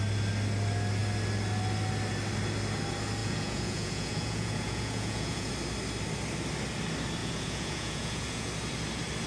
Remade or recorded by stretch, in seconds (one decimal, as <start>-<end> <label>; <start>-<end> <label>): 0.0-3.2 recorded; 3.2-5.5 remade; 5.5-7.2 recorded; 7.2-8.5 remade; 8.5-9.3 recorded